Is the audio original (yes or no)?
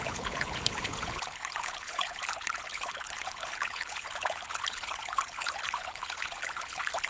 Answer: no